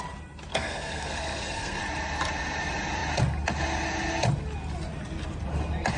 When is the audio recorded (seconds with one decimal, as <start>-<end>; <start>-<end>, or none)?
0.0-0.5; 1.8-6.0

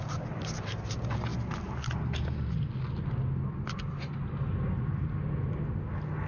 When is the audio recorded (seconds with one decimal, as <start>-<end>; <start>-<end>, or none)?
0.0-6.3

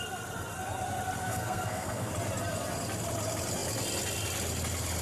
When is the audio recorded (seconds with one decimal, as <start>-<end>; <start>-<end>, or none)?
0.0-1.2; 2.1-5.0

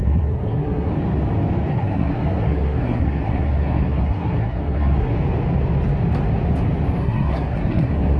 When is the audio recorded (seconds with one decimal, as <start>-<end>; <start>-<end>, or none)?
0.9-1.7; 5.1-7.0

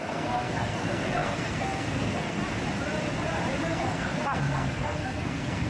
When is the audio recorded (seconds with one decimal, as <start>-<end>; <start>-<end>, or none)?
2.4-3.6

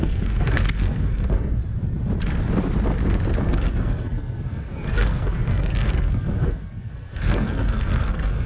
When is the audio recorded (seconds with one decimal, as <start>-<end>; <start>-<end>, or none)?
1.6-3.4

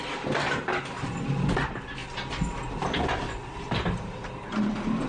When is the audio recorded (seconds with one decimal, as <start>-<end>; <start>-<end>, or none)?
0.0-5.1

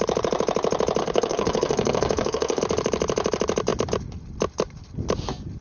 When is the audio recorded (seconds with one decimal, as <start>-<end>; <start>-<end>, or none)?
0.0-1.0; 2.6-5.6